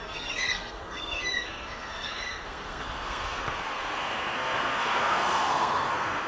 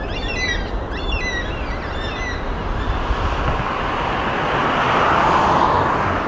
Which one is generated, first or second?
first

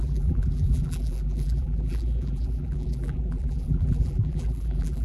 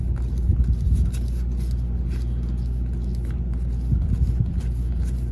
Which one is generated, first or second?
first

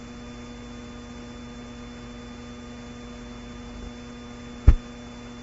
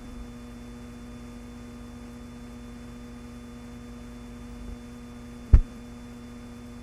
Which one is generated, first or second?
second